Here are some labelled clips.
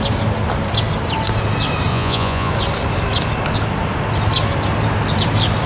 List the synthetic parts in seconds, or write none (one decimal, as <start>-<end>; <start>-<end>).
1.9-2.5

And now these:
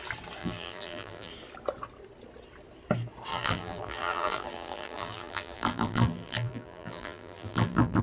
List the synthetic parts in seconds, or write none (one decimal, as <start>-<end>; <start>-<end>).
0.4-1.3; 3.3-8.0

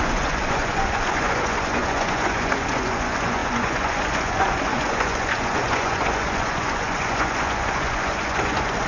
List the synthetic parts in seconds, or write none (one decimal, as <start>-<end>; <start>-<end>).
0.0-8.9